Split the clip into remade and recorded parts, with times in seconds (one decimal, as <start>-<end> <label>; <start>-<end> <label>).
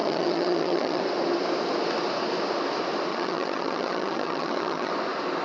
0.0-1.0 remade; 1.0-3.1 recorded; 3.1-4.9 remade; 4.9-5.4 recorded